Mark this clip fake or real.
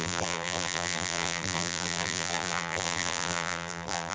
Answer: fake